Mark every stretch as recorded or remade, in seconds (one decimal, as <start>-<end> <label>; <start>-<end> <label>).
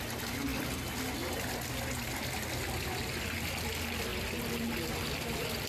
0.0-5.7 recorded